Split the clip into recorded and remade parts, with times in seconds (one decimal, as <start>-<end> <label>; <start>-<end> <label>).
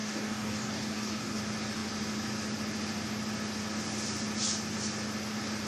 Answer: 0.0-1.4 remade; 1.4-5.7 recorded